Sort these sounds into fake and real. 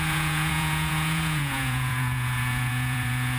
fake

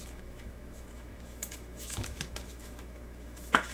fake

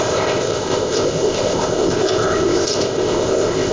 fake